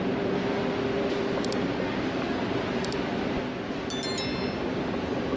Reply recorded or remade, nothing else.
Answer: recorded